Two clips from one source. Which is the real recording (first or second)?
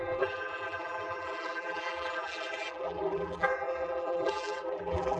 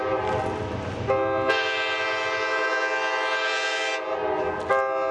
second